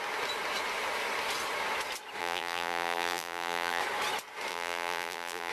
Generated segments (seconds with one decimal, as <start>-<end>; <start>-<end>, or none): 2.2-3.8; 4.5-5.5